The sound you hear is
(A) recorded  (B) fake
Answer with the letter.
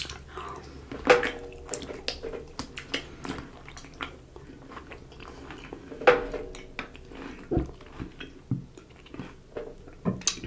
A